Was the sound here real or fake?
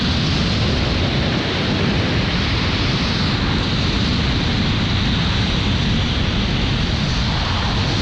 real